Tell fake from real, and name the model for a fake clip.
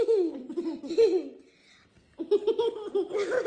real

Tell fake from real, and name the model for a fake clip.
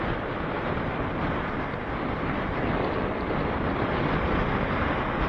real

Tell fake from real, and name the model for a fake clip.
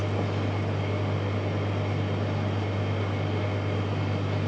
real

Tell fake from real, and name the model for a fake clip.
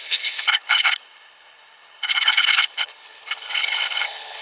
fake, codec, HILCodec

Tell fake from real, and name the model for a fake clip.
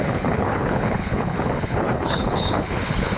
fake, codec, HILCodec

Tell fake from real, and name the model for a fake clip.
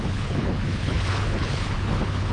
fake, codec, HILCodec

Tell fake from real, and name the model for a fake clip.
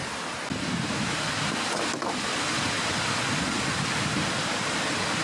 real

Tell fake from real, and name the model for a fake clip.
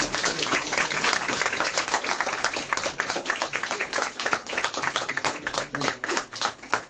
fake, codec, HILCodec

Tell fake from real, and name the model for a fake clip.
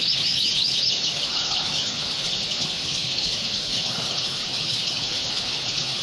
fake, codec, HILCodec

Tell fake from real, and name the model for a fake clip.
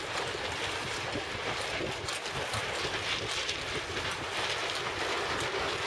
real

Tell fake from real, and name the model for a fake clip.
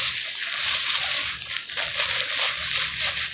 real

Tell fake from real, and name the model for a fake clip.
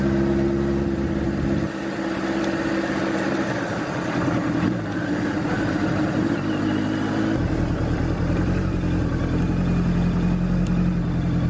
real